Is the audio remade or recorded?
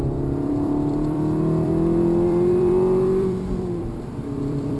remade